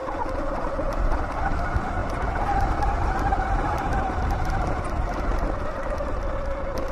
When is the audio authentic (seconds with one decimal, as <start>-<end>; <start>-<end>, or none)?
0.0-6.9

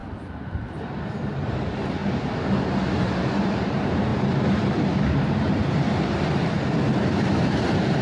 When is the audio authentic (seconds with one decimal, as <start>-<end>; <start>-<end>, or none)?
2.0-3.0; 4.1-4.7

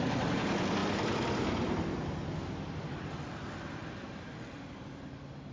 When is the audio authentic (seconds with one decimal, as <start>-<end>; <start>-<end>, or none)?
0.0-5.5